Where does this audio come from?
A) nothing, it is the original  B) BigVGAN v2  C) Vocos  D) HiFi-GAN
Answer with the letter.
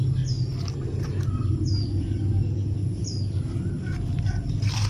A